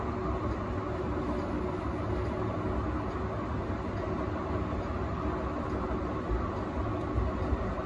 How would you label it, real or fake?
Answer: real